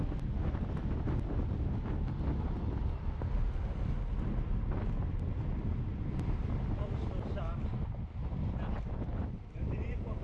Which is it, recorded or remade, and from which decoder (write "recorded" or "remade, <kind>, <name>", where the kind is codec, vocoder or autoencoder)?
recorded